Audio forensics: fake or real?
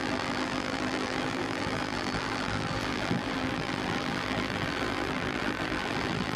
fake